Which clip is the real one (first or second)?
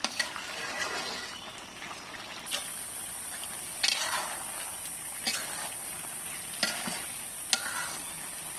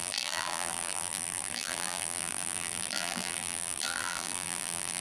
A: first